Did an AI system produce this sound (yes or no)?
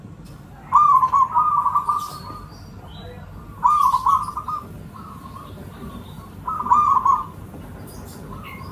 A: no